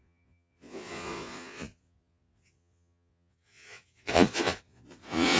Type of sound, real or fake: fake